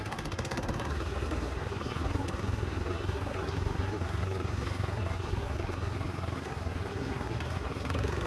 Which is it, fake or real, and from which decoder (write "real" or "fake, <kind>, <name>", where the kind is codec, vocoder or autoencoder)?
fake, codec, SNAC